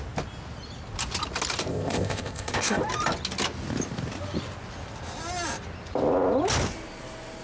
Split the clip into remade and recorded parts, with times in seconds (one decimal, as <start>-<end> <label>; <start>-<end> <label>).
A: 0.0-1.7 recorded; 1.7-2.8 remade; 2.8-7.4 recorded